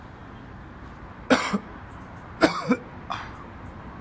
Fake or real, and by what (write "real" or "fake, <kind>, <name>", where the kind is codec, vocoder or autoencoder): real